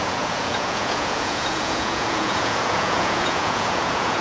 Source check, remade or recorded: remade